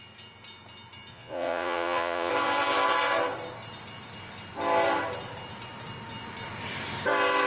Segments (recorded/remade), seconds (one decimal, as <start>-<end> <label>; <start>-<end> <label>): 0.0-1.1 recorded; 1.1-2.3 remade; 2.3-7.5 recorded